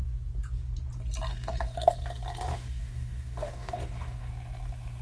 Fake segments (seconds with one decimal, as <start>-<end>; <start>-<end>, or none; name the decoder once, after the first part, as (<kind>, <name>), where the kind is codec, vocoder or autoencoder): 1.3-1.9 (codec, DAC); 2.5-4.3